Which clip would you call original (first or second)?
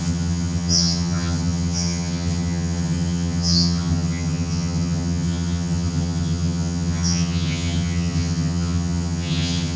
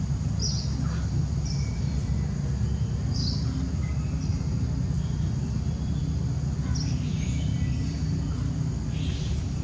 second